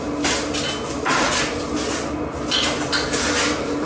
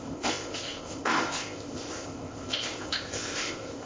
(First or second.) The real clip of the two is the first